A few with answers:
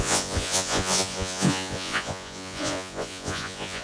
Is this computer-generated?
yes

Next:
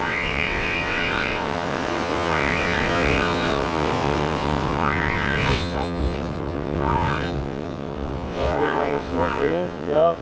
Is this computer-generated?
yes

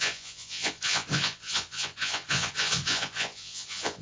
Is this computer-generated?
yes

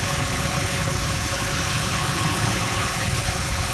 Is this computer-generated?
yes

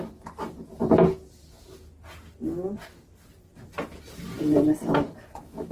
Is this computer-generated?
no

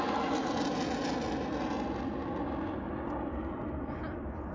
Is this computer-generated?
no